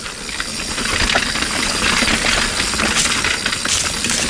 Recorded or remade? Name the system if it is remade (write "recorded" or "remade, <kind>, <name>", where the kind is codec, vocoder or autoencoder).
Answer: recorded